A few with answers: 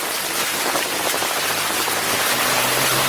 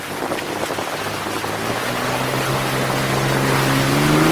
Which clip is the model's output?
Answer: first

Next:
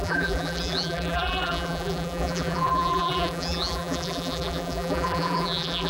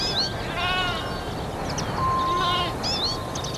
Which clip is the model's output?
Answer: first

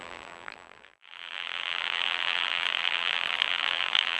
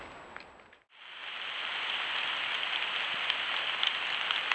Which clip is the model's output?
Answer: first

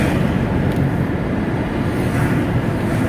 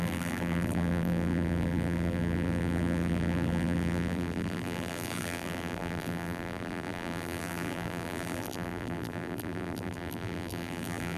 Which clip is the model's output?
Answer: second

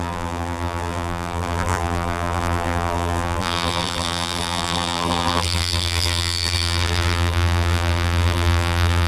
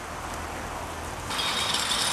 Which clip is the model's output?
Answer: first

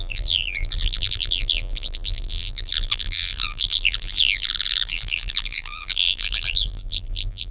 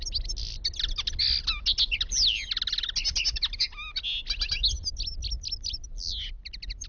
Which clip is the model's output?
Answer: first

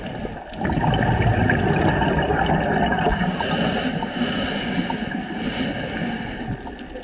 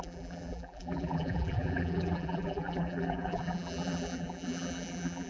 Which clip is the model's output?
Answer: second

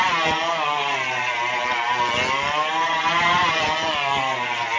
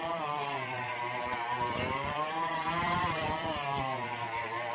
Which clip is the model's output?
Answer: second